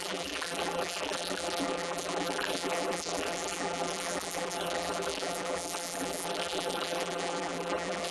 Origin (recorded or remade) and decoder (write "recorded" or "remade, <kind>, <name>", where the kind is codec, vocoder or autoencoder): remade, vocoder, BigVGAN v2